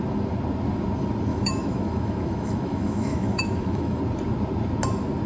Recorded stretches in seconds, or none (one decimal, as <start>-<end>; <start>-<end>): 0.0-1.3; 4.0-5.3